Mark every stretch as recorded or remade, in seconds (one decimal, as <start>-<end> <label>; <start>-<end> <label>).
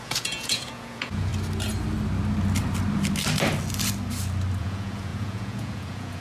0.0-1.3 remade; 1.3-4.6 recorded; 4.6-6.2 remade